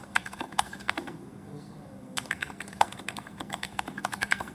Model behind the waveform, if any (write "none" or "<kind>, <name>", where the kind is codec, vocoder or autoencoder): codec, SNAC